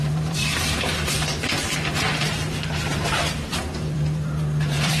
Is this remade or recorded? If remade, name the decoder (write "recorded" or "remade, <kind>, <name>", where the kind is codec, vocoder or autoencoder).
remade, vocoder, BigVGAN v2